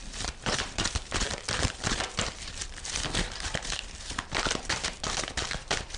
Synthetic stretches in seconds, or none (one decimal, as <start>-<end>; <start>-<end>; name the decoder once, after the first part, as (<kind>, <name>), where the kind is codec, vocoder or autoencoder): 0.0-6.0 (vocoder, BigVGAN v2)

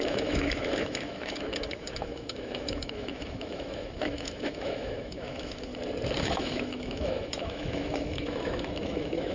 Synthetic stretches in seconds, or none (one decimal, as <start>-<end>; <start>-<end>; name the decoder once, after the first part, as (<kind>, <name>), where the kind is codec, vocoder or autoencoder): 0.0-5.7 (autoencoder, DAC-VAE); 6.2-9.3

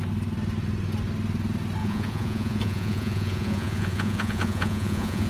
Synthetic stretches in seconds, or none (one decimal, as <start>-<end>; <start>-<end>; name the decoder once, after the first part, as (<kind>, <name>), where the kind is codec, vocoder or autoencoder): 1.8-5.3 (vocoder, Vocos)

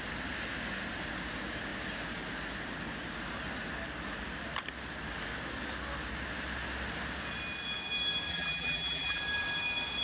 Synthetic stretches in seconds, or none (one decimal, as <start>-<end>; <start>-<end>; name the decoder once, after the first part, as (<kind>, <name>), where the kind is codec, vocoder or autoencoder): 8.3-9.2 (vocoder, BigVGAN v2)